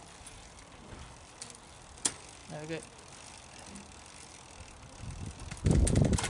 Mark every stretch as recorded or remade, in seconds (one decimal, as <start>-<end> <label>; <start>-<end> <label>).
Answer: 0.0-6.3 recorded